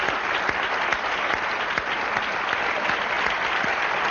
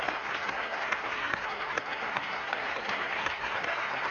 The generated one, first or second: second